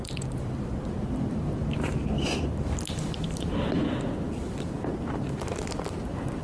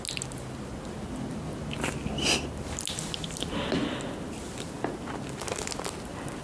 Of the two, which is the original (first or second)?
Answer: second